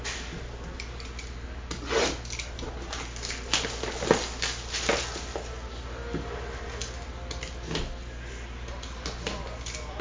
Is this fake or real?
real